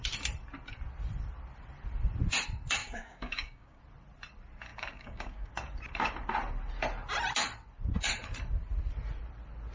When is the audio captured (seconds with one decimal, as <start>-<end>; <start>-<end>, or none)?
0.0-2.8; 3.8-4.7; 5.5-9.7